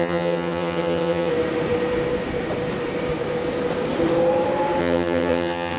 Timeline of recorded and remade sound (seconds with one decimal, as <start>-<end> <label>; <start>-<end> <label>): 0.0-1.3 remade; 1.3-4.8 recorded; 4.8-5.8 remade